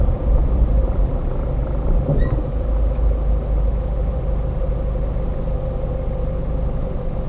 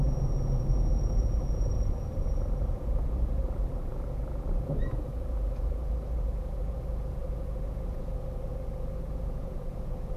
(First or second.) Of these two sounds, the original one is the first